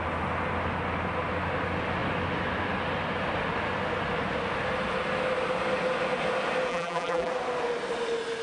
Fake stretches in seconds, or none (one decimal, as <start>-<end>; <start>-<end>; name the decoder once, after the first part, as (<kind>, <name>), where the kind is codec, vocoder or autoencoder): 6.7-7.3 (vocoder, BigVGAN v2)